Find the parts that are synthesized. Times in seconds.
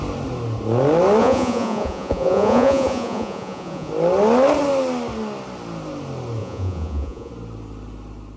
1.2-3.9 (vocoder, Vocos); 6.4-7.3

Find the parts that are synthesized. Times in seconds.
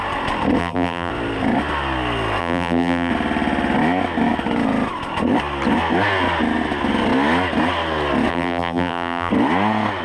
0.6-1.1 (vocoder, BigVGAN v2); 2.4-3.1; 8.3-9.3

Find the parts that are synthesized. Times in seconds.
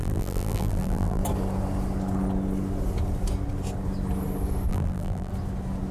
0.0-1.2 (vocoder, BigVGAN v2); 4.7-5.3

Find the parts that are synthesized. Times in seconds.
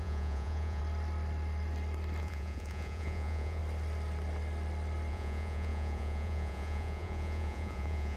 0.0-0.8 (vocoder, Vocos); 2.2-3.6; 5.1-8.2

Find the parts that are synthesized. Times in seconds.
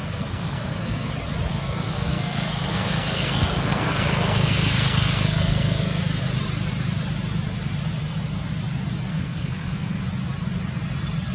0.0-1.1 (codec, SNAC); 1.5-6.0; 9.1-10.0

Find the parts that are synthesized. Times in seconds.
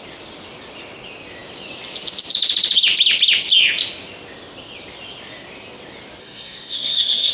6.2-7.3 (codec, SNAC)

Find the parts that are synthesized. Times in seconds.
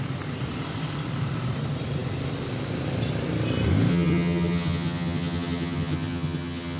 3.9-6.8 (vocoder, HiFi-GAN)